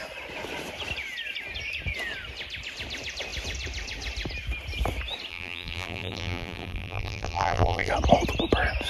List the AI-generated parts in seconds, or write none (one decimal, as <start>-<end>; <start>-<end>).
5.3-7.9